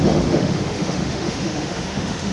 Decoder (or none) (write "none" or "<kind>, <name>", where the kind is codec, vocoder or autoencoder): autoencoder, DAC-VAE